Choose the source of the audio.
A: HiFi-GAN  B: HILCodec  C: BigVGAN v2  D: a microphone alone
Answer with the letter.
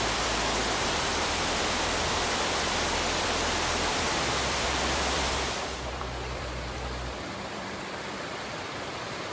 C